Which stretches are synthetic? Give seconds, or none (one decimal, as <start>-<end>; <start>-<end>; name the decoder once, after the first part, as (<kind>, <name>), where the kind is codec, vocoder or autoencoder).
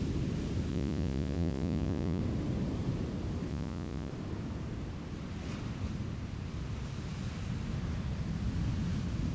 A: 0.7-2.2 (vocoder, Vocos); 3.5-4.1